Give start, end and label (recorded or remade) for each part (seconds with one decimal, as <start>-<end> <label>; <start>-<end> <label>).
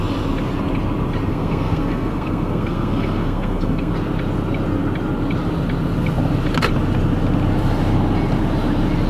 0.0-1.3 recorded; 1.3-3.9 remade; 3.9-9.1 recorded